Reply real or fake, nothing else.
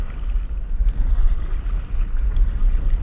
real